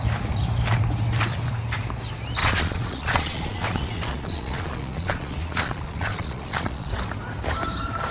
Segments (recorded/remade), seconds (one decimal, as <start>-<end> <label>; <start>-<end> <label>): 0.0-2.4 recorded; 2.4-6.9 remade; 6.9-8.1 recorded